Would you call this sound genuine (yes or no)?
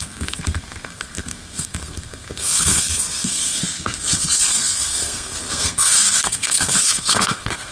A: no